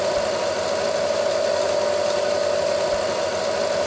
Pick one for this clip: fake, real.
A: real